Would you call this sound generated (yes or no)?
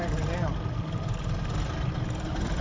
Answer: no